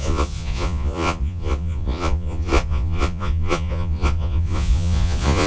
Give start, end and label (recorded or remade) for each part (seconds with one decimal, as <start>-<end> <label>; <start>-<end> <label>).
0.0-5.5 remade